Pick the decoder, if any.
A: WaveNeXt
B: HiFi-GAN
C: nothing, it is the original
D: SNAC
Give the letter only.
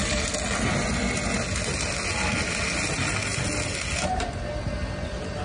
C